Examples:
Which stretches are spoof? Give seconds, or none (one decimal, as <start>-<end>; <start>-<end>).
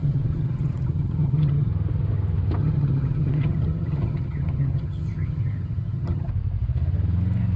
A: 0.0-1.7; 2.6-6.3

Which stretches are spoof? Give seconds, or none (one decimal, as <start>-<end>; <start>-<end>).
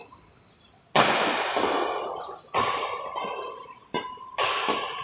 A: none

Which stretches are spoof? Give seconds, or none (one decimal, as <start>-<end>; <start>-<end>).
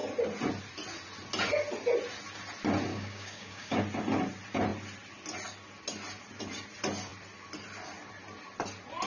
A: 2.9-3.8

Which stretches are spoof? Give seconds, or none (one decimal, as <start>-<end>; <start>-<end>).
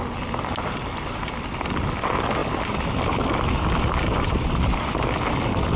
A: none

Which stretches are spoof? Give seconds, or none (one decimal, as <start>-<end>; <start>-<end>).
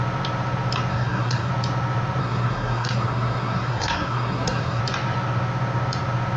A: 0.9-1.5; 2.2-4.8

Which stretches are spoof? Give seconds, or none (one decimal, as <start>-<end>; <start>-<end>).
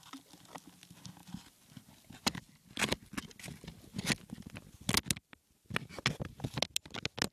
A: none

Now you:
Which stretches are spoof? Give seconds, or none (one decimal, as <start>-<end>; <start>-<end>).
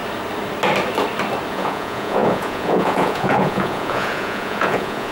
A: 1.5-5.1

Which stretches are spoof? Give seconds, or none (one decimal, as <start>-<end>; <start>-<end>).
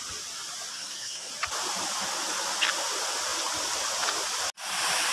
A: 0.7-1.3